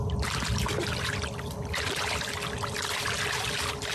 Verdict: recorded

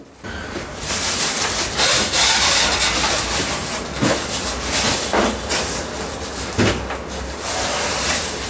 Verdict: recorded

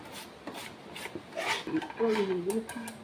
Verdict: recorded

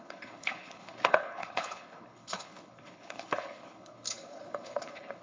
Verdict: remade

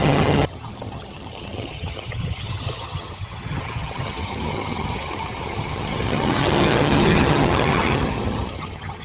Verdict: remade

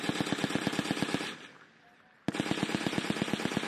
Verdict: recorded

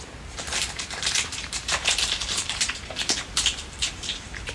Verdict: remade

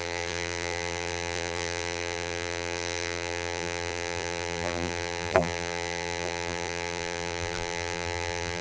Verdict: remade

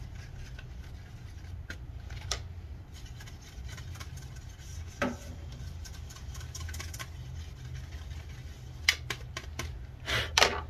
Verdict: recorded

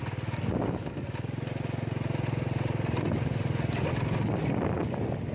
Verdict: recorded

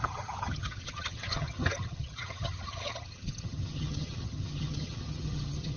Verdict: remade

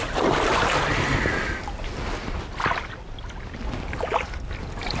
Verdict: recorded